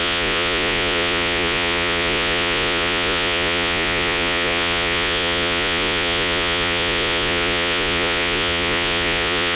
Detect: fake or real fake